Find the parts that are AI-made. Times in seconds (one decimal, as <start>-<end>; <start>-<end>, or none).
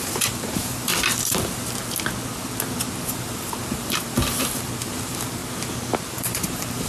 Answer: 0.0-0.9; 3.1-4.2; 4.8-5.4; 6.1-6.9